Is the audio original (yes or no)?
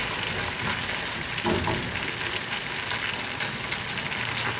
yes